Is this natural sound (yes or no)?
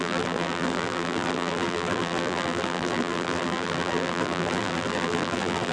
no